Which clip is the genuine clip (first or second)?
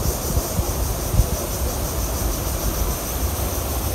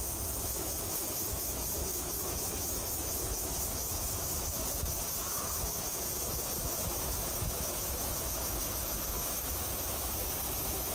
first